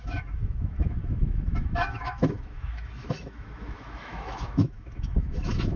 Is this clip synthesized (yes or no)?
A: yes